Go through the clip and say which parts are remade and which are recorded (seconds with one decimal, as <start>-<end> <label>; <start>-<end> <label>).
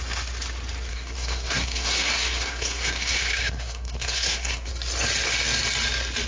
0.0-0.9 recorded; 0.9-4.7 remade; 4.7-6.3 recorded